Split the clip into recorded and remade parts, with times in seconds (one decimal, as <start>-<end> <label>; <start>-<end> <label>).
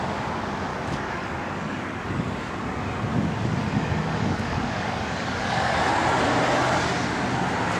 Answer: 0.0-0.7 recorded; 0.7-2.5 remade; 2.5-3.1 recorded; 3.1-5.9 remade; 5.9-7.8 recorded